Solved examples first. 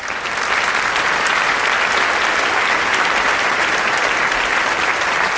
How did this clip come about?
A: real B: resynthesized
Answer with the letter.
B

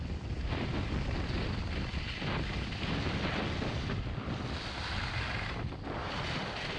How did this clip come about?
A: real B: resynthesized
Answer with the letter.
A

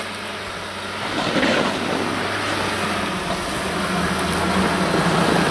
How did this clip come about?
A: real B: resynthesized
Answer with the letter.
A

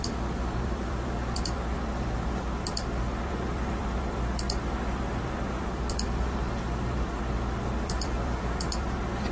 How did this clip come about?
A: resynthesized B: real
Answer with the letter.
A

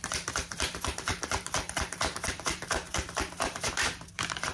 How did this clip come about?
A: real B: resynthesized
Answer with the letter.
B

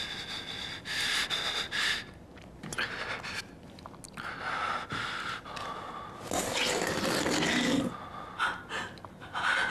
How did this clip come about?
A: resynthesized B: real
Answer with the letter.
B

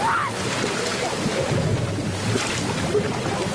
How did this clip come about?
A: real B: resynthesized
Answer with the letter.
A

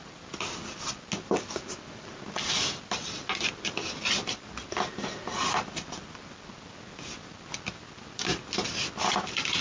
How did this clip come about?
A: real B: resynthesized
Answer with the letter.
A